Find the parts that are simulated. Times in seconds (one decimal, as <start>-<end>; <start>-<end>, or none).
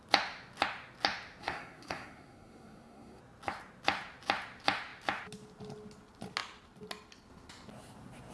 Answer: 1.4-3.2